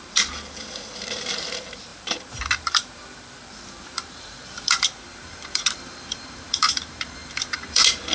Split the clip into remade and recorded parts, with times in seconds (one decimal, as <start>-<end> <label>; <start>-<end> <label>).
0.0-8.1 remade